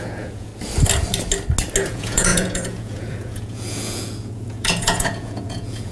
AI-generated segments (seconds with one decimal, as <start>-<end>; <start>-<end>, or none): 0.0-0.5; 1.9-5.9